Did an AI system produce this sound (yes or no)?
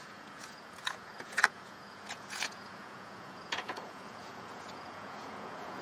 yes